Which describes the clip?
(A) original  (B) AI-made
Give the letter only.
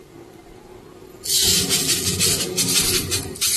A